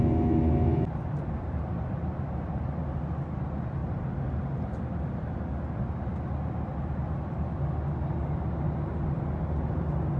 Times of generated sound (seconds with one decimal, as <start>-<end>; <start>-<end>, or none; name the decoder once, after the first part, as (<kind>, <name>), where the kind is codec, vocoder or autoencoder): none